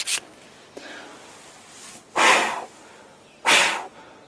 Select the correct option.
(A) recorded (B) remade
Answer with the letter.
A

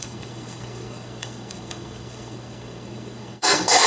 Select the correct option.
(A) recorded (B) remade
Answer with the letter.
B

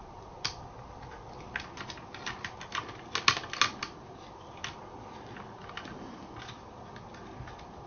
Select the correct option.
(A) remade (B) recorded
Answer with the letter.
B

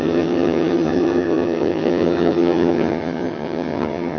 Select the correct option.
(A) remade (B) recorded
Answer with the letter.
A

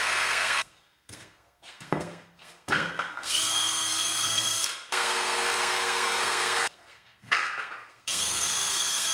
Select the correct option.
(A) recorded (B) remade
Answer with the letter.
B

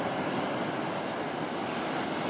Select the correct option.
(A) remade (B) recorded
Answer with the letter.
B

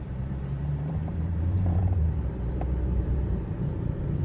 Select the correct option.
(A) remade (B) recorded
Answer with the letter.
A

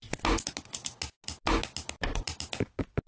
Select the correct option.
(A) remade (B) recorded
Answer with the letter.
B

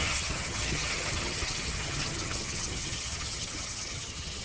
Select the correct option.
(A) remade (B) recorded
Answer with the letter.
A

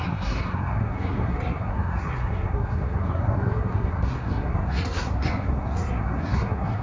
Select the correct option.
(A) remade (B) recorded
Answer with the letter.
A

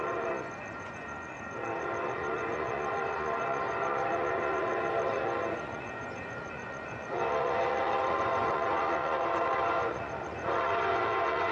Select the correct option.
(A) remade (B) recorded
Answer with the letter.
A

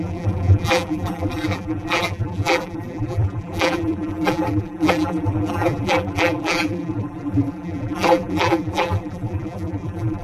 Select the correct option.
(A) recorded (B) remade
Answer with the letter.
B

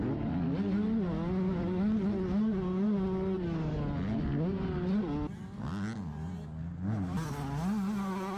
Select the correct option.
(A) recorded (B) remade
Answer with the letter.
A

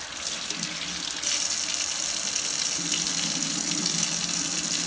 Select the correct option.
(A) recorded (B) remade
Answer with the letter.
A